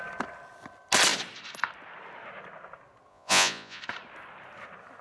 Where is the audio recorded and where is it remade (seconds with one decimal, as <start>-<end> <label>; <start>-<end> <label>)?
0.0-3.1 recorded; 3.1-3.8 remade; 3.8-5.0 recorded